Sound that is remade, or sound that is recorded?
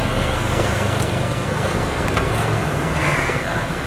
remade